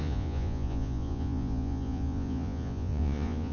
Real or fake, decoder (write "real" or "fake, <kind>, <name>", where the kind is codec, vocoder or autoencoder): fake, vocoder, Vocos